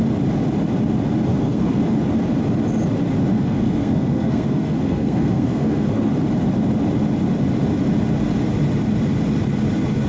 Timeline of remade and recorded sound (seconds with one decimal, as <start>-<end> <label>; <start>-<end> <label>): 0.0-1.3 recorded; 1.3-1.8 remade; 1.8-3.3 recorded; 3.3-6.1 remade; 6.1-10.1 recorded

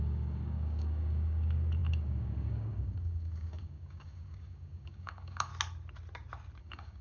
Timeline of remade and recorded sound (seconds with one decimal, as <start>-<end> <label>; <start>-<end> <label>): 0.0-5.5 remade; 5.5-6.6 recorded; 6.6-7.0 remade

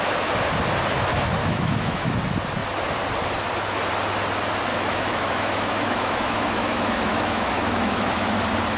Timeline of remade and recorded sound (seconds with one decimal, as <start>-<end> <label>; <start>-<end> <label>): 0.0-1.4 recorded; 1.4-2.2 remade; 2.2-4.7 recorded; 4.7-8.3 remade; 8.3-8.8 recorded

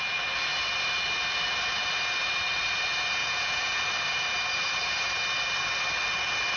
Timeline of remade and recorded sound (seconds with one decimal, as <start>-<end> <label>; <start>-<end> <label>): 0.0-3.2 recorded; 3.2-3.8 remade; 3.8-6.6 recorded

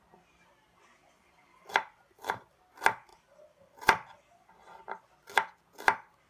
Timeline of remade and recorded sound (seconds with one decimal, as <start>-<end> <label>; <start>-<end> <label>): 0.0-1.0 recorded; 1.0-2.6 remade; 2.6-3.1 recorded; 3.1-4.5 remade; 4.5-6.3 recorded